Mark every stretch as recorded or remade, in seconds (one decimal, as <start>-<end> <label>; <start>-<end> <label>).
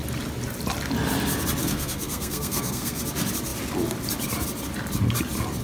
0.0-1.6 recorded; 1.6-3.0 remade; 3.0-5.6 recorded